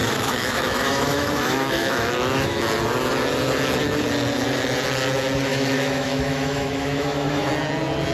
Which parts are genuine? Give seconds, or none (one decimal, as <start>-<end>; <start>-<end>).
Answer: 2.6-5.5; 7.5-8.1